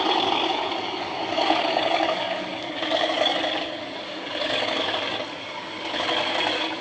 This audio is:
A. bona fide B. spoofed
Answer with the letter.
B